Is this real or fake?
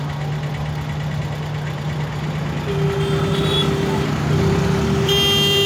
real